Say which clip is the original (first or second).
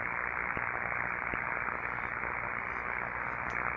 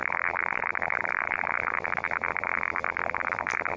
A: first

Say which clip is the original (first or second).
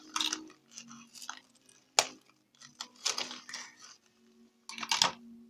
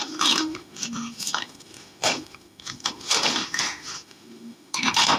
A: first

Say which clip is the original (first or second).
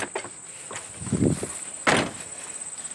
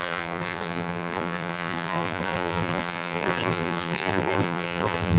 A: first